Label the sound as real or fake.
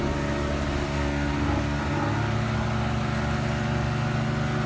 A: real